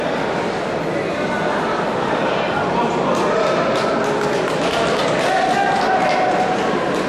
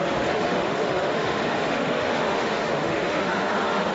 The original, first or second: first